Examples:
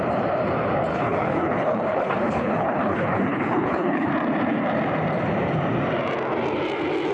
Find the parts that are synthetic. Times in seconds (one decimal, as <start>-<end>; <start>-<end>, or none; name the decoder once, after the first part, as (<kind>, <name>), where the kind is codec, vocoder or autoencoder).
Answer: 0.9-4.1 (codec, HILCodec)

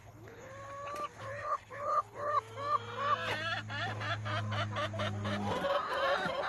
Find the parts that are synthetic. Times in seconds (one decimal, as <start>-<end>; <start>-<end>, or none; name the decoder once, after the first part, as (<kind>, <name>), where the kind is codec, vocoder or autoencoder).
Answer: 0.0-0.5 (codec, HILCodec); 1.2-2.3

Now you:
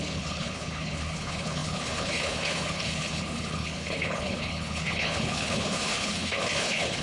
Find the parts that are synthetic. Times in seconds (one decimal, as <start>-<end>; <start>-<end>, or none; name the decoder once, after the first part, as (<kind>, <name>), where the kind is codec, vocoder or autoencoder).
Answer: 0.0-7.0 (codec, HILCodec)

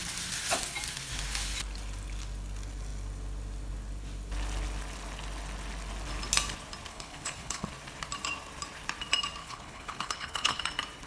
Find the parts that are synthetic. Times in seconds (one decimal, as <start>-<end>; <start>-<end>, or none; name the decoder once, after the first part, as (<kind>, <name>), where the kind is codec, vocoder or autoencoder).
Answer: 6.9-7.7 (codec, HILCodec); 9.4-10.6

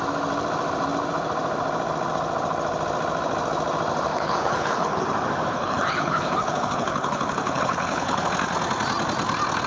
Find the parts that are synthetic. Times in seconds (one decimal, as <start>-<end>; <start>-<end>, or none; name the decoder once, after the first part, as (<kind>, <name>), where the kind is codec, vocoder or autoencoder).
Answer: 4.1-5.0 (codec, HILCodec); 5.5-8.2

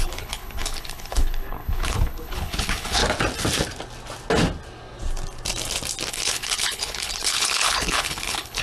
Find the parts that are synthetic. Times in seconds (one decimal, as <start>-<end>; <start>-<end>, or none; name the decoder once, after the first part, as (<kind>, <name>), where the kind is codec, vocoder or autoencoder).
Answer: 0.0-3.0 (codec, HILCodec); 6.1-8.6

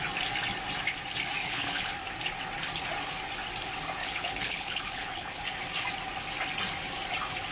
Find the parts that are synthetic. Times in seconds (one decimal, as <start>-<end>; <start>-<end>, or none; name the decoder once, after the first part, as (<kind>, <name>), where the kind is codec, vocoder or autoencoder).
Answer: 1.4-1.9 (codec, HILCodec); 4.0-5.4

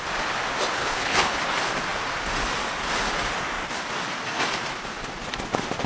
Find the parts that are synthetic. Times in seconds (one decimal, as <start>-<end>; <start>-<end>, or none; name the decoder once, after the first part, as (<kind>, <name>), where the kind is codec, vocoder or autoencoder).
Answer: 0.8-1.4 (codec, HILCodec)